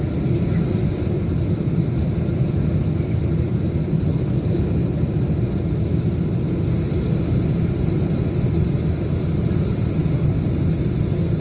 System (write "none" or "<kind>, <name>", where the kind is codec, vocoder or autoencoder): none